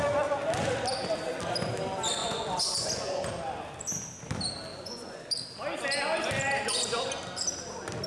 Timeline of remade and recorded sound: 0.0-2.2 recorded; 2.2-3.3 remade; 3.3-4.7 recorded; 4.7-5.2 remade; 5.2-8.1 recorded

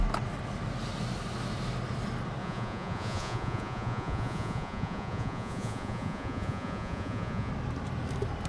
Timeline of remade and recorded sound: 0.0-2.4 recorded; 2.4-7.5 remade; 7.5-8.5 recorded

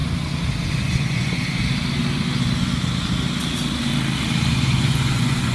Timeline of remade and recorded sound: 0.0-0.7 recorded; 0.7-1.6 remade; 1.6-4.5 recorded; 4.5-5.5 remade

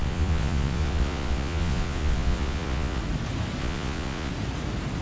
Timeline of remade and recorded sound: 0.0-3.0 remade; 3.0-3.6 recorded; 3.6-4.3 remade; 4.3-5.0 recorded